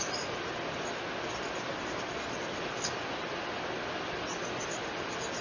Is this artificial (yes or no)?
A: no